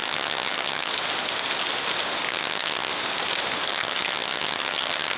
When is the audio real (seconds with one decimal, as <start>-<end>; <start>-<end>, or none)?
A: 0.9-2.3; 2.9-3.7